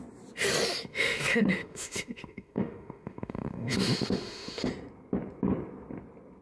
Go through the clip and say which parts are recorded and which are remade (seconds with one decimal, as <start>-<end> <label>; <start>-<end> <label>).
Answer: 0.0-0.9 recorded; 0.9-4.7 remade; 4.7-6.4 recorded